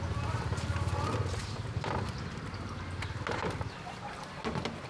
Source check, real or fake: real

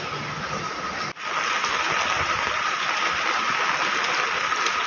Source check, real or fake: real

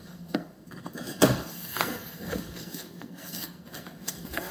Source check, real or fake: fake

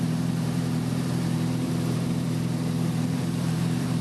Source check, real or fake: fake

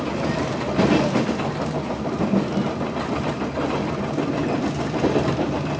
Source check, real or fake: real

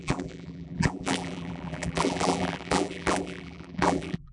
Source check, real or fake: fake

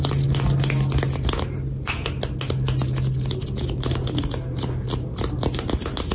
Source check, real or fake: real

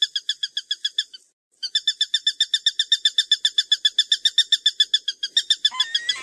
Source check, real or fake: real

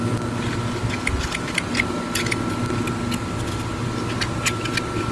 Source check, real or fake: real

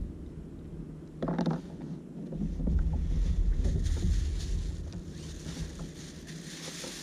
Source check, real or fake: real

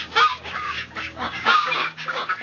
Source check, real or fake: fake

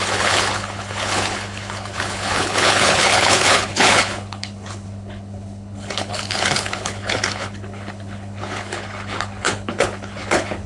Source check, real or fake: fake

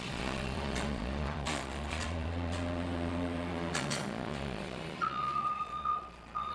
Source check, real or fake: fake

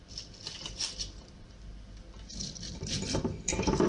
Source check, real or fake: fake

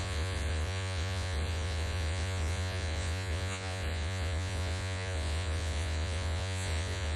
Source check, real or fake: fake